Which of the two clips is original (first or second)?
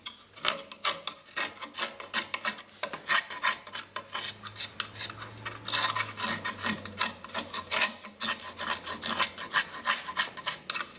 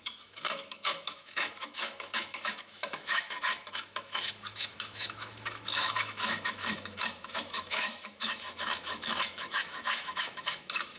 first